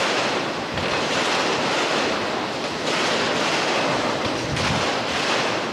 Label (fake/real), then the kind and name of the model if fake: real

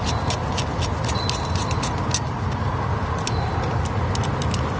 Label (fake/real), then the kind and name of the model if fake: real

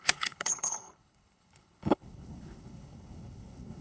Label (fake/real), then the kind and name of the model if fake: fake, codec, HILCodec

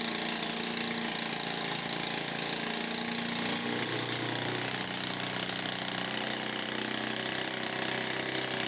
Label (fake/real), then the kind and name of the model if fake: real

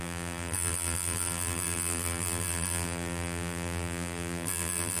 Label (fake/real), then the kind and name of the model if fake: fake, vocoder, BigVGAN v2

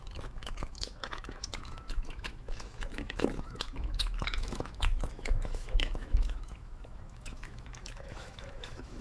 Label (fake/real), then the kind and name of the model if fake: fake, autoencoder, DAC-VAE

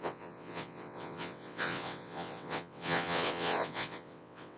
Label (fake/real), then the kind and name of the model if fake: fake, vocoder, WaveNeXt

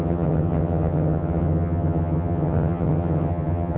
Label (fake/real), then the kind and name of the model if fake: fake, vocoder, HiFi-GAN